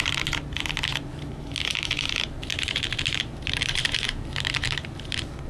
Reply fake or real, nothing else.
fake